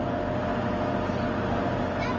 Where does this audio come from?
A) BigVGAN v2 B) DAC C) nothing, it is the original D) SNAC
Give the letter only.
C